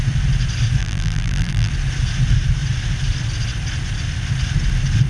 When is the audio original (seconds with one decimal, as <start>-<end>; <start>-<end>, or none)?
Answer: 0.0-0.8; 1.7-5.1